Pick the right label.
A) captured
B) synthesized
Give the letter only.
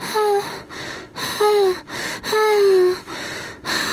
B